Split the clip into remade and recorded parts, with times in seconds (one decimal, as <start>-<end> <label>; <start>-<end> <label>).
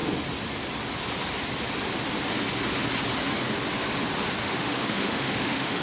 0.0-4.4 recorded; 4.4-5.8 remade